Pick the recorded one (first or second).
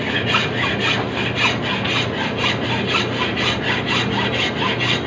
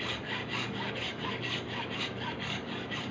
first